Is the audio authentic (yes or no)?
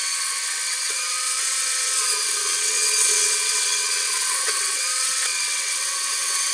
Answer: no